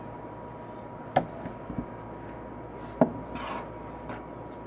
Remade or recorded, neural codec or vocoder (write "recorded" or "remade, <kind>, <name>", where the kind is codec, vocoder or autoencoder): recorded